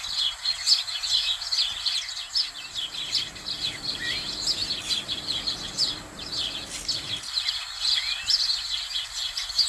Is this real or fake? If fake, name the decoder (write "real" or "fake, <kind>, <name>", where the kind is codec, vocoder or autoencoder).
real